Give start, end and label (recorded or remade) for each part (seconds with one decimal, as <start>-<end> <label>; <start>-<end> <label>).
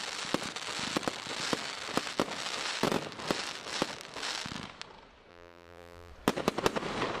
0.0-5.3 recorded; 5.3-6.1 remade; 6.1-7.2 recorded